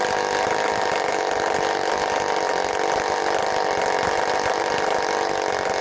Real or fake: real